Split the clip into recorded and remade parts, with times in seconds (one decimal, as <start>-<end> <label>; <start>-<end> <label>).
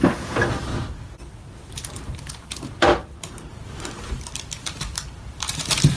0.0-0.7 remade; 0.7-1.7 recorded; 1.7-2.9 remade; 2.9-3.5 recorded; 3.5-6.0 remade